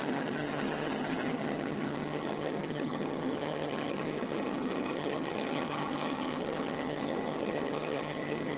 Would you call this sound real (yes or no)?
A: no